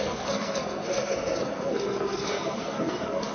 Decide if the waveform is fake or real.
fake